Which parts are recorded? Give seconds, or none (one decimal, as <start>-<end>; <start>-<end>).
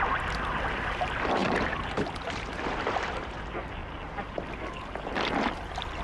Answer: 3.8-5.1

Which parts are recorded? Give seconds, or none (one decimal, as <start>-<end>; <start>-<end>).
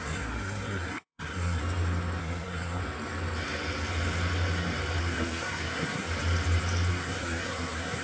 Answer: 1.6-2.2; 2.8-5.0; 6.1-6.9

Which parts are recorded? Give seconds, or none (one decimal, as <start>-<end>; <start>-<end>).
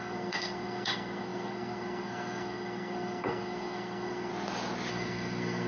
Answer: 4.3-4.9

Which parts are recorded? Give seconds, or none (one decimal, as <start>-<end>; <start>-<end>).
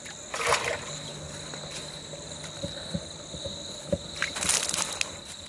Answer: 0.0-5.5